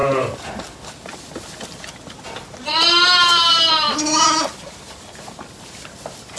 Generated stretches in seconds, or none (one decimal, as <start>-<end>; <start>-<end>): none